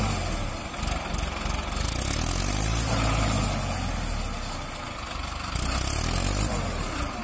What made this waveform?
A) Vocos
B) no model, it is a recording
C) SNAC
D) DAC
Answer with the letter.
B